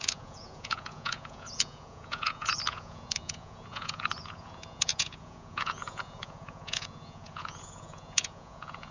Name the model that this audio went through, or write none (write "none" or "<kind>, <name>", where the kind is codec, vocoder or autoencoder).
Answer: vocoder, Vocos